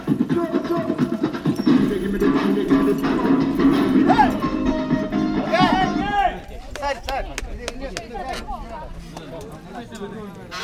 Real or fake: real